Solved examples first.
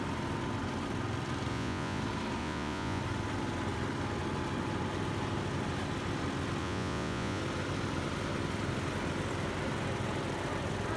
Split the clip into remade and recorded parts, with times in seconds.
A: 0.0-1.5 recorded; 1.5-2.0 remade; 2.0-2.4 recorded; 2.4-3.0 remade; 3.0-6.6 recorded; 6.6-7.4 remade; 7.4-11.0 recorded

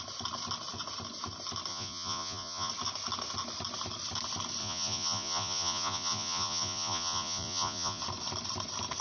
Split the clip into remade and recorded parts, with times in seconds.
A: 0.0-1.7 recorded; 1.7-2.7 remade; 2.7-4.6 recorded; 4.6-8.0 remade; 8.0-9.0 recorded

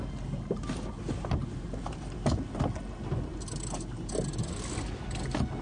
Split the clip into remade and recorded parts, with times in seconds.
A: 0.0-5.6 recorded

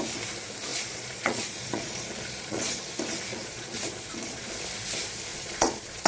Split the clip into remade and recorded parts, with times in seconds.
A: 0.0-0.7 recorded; 0.7-2.8 remade; 2.8-3.3 recorded; 3.3-4.5 remade; 4.5-5.3 recorded; 5.3-6.1 remade

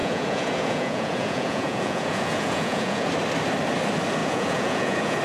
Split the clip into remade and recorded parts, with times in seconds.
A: 0.0-3.1 remade; 3.1-4.2 recorded; 4.2-5.2 remade